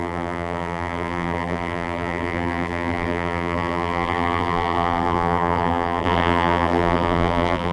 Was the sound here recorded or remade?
remade